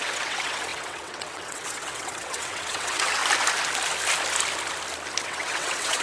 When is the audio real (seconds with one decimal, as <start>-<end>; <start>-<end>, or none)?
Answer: 3.2-5.2